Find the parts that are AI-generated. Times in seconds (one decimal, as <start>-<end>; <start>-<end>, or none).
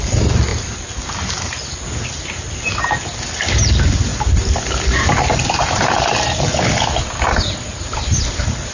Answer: none